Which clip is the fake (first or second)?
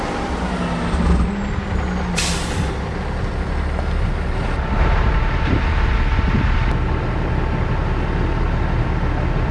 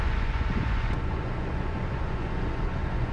second